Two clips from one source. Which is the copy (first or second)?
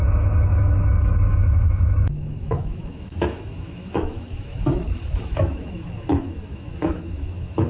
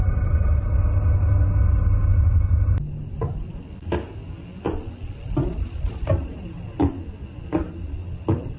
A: first